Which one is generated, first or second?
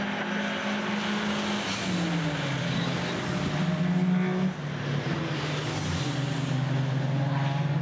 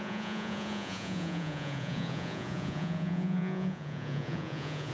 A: second